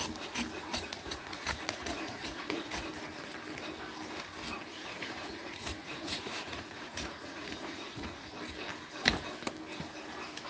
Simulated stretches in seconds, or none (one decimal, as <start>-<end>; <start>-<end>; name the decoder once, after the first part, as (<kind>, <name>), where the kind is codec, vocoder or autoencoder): 0.7-2.9 (vocoder, Vocos); 4.7-8.3